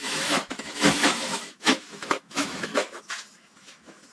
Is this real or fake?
fake